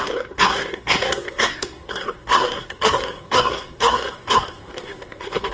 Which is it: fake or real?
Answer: fake